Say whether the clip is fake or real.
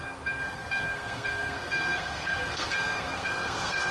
fake